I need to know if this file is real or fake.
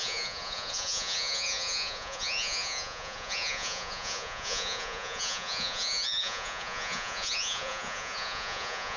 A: fake